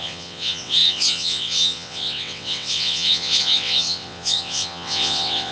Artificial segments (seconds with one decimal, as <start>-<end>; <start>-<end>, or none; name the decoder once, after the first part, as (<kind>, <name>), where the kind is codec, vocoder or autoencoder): 0.0-5.5 (vocoder, WaveNeXt)